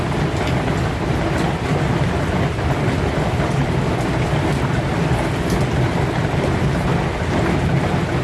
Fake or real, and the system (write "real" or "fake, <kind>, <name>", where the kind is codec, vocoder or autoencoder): real